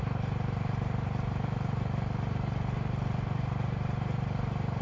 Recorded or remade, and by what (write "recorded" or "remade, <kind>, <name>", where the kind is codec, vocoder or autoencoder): remade, vocoder, BigVGAN v2